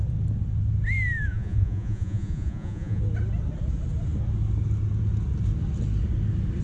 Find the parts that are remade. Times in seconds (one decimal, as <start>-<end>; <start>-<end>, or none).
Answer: 1.3-3.0